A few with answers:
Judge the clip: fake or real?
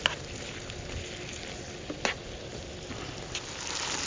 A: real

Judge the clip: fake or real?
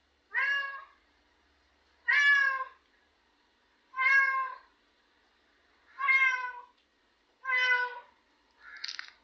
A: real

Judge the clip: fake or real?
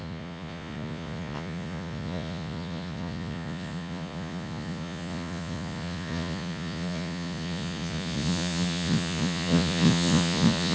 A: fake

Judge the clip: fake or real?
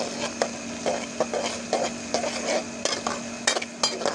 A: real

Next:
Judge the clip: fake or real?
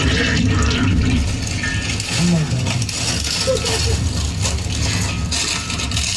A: real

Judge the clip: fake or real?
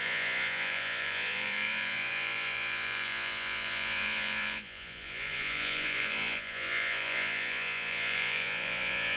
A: fake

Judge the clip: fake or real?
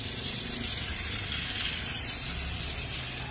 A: real